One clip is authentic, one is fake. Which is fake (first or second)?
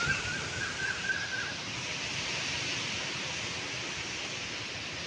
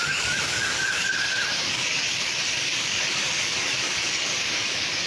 second